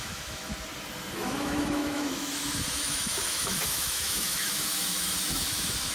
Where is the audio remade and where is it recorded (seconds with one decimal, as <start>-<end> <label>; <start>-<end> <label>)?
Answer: 0.0-0.5 remade; 0.5-1.1 recorded; 1.1-5.9 remade